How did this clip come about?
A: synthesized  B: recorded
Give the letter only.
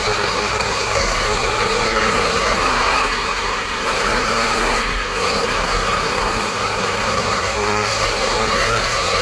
A